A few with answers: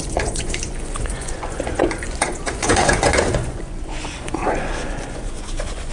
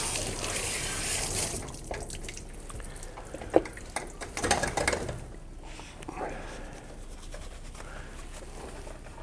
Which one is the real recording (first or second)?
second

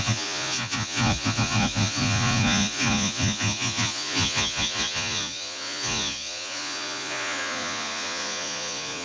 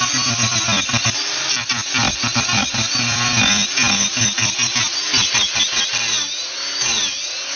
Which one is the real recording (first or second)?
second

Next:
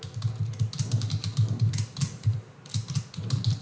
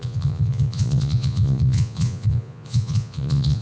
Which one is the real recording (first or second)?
first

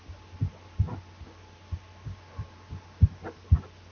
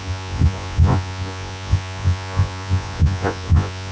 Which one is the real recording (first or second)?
first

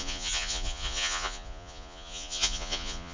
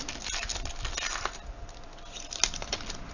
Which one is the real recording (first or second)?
second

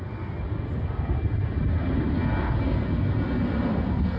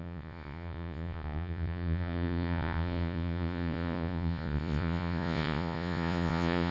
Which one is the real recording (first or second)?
first